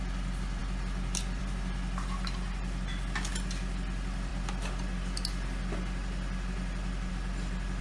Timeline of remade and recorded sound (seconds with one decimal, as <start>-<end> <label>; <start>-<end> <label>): 0.0-7.8 recorded